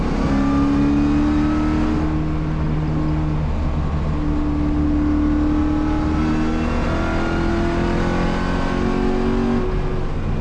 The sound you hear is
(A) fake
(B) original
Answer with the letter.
B